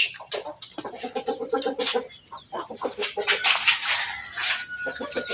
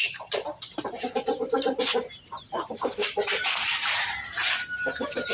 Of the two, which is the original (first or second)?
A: first